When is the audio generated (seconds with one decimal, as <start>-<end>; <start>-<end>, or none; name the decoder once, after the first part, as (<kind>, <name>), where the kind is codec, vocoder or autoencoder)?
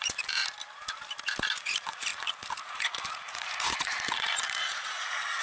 0.0-0.4 (vocoder, Vocos); 1.6-5.4